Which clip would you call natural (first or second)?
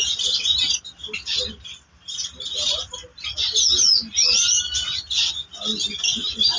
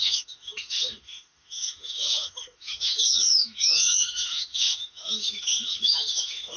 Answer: first